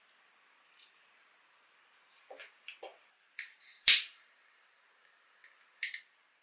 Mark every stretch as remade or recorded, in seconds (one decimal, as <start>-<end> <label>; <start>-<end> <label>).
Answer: 0.0-2.9 recorded; 2.9-5.4 remade; 5.4-6.4 recorded